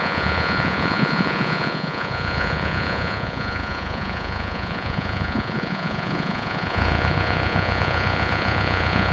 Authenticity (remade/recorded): remade